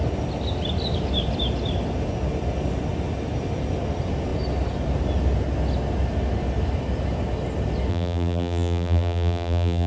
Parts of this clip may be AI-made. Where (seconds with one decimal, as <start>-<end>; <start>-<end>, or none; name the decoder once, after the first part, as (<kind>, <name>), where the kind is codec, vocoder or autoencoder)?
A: 7.9-9.9 (vocoder, BigVGAN v2)